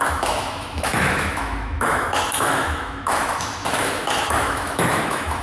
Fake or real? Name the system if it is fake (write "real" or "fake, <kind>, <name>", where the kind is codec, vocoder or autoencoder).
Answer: fake, autoencoder, DAC-VAE